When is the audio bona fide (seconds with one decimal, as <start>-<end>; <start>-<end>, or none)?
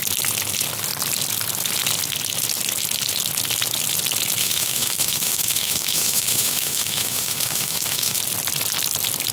0.0-4.4; 8.2-9.3